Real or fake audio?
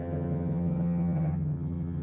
fake